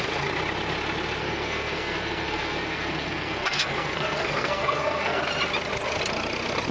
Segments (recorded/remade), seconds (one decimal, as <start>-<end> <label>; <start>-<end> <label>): 0.0-1.2 recorded; 1.2-5.2 remade; 5.2-6.7 recorded